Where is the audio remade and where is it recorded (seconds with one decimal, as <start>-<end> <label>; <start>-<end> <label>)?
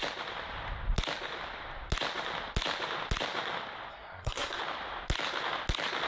0.0-3.9 recorded; 3.9-4.6 remade; 4.6-6.1 recorded